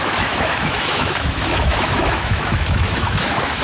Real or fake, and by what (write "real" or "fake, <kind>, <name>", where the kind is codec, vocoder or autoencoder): fake, autoencoder, DAC-VAE